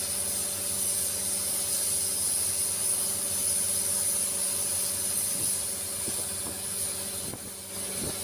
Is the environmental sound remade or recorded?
recorded